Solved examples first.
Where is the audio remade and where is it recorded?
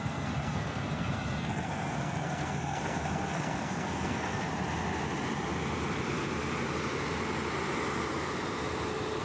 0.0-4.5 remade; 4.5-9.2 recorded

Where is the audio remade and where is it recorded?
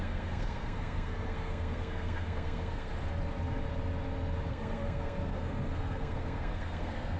0.0-2.9 remade; 2.9-4.5 recorded; 4.5-7.2 remade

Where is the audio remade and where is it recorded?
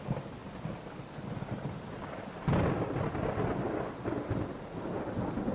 0.0-5.5 recorded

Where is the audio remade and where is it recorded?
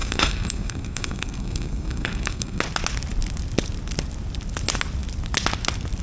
0.0-2.6 remade; 2.6-6.0 recorded